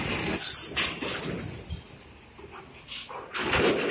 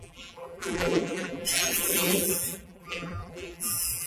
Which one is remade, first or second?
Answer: second